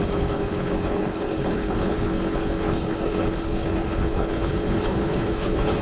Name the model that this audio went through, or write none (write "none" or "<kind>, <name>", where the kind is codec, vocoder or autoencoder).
codec, HILCodec